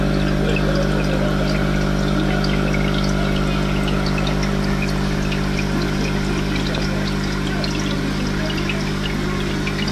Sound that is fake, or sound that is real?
real